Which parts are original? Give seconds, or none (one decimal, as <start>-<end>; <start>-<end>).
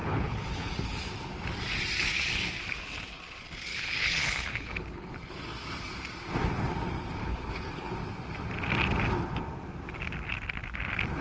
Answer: 1.0-3.7; 5.1-7.2; 7.9-11.2